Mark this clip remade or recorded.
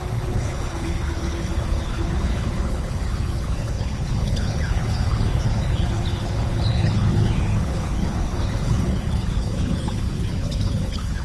remade